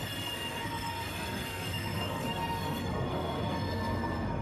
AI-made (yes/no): yes